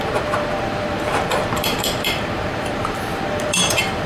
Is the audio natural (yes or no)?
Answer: no